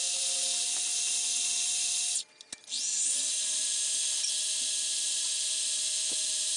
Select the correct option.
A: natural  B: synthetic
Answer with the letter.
A